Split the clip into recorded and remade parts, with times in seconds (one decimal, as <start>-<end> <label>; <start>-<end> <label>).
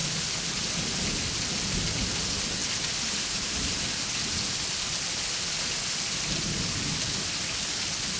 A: 0.0-8.2 recorded